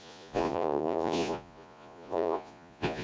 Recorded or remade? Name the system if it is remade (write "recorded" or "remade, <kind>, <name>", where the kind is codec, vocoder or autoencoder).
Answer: remade, vocoder, Vocos